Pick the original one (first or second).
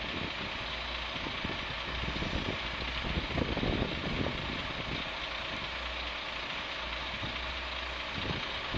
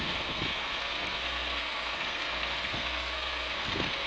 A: first